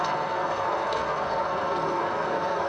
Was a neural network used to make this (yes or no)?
yes